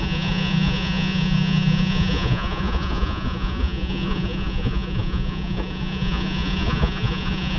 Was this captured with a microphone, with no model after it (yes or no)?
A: no